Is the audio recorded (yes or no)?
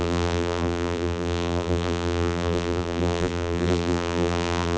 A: no